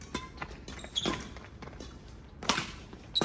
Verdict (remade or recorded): recorded